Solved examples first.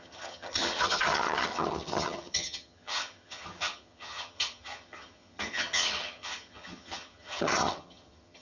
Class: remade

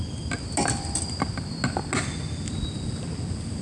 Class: recorded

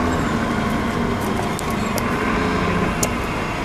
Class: recorded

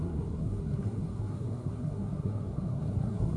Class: remade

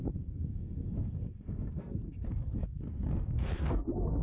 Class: remade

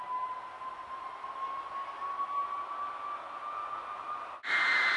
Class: recorded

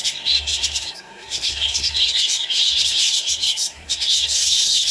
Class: remade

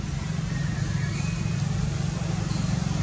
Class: recorded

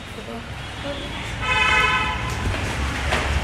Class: remade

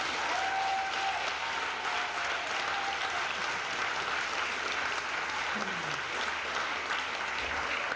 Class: recorded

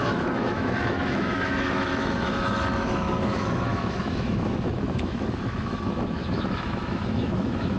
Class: remade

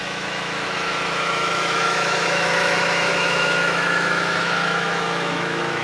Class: remade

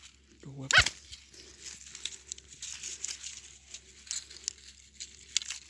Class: recorded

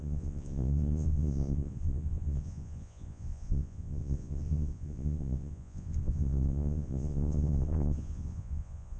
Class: remade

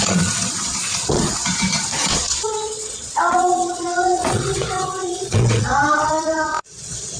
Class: remade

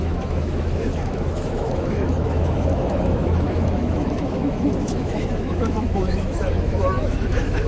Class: remade